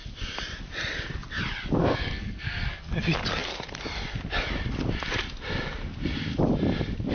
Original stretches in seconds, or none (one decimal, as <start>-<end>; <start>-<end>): 0.0-1.8; 2.9-7.1